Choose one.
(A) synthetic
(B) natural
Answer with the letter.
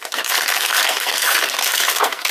A